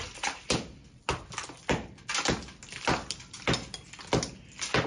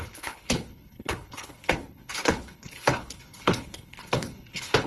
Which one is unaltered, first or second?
first